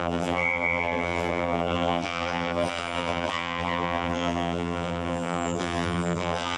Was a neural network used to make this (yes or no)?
yes